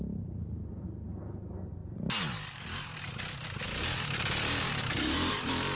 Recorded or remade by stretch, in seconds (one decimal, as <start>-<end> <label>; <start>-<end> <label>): 0.0-5.8 recorded